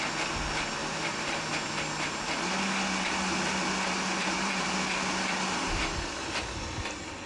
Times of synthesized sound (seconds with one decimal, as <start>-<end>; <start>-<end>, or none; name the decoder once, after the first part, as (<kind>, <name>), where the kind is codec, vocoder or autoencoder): 0.8-1.5 (vocoder, BigVGAN v2); 4.2-4.7